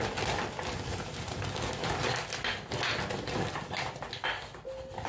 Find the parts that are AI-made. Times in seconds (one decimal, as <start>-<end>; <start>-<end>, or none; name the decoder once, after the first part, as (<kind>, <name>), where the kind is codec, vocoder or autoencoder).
none

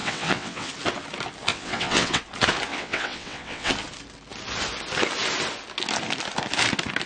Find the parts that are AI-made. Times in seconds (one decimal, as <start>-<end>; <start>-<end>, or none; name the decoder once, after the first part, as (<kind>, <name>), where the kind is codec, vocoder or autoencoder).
0.0-0.7 (vocoder, WaveNeXt); 1.5-2.2; 2.7-3.7

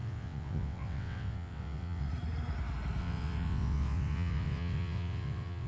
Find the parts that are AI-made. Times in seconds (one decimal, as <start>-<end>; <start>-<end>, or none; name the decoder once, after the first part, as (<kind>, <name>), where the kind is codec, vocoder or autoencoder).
0.0-2.1 (vocoder, WaveNeXt); 3.0-5.7

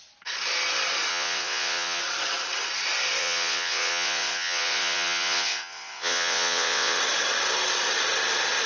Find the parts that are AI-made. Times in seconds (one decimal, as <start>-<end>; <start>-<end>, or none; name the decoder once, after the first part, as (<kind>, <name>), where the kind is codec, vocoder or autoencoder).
1.1-2.0 (vocoder, WaveNeXt); 3.2-7.0

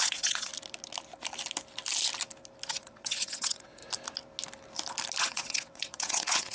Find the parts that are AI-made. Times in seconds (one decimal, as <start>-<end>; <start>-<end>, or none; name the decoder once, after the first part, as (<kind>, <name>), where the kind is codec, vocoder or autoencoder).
0.0-0.5 (vocoder, WaveNeXt); 2.7-3.8; 5.2-6.5